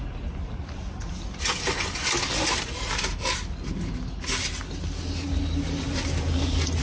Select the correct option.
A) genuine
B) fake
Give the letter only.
A